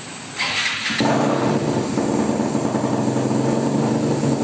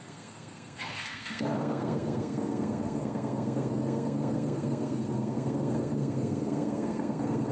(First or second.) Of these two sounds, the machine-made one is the second